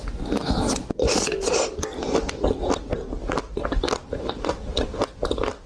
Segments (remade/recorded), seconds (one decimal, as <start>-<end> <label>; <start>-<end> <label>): 0.0-5.7 recorded